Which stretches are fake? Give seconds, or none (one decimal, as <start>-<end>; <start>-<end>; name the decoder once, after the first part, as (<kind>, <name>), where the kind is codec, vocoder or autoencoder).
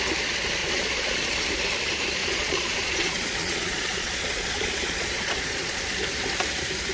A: 0.6-1.1 (vocoder, Vocos); 2.2-5.8